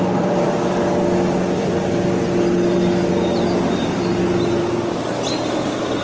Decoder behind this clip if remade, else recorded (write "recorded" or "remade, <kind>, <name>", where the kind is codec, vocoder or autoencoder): recorded